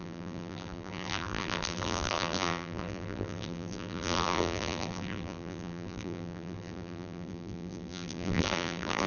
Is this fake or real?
fake